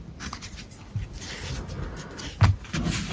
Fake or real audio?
real